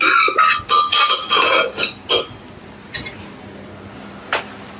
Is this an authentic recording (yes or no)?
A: yes